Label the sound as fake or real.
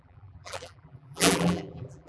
fake